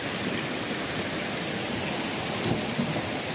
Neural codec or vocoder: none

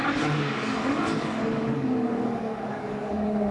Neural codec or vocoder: codec, DAC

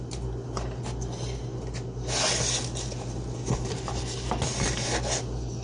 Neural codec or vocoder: none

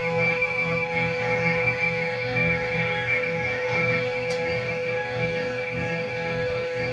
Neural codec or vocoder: codec, DAC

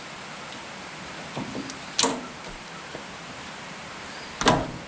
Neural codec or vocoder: none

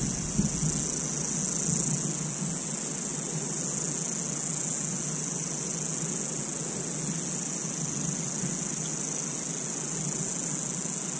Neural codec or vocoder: none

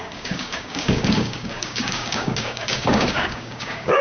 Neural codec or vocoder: codec, DAC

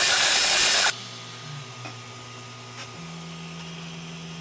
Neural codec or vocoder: none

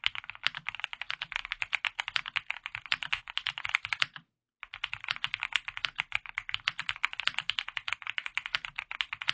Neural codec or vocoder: none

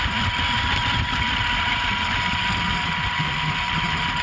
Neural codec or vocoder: none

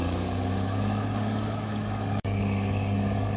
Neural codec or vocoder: codec, DAC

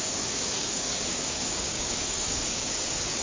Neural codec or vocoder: codec, DAC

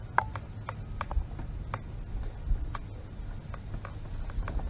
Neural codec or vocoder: none